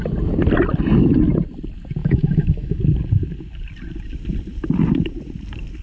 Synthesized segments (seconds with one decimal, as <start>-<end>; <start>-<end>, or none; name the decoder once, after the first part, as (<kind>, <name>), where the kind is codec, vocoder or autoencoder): 2.0-2.8 (autoencoder, DAC-VAE)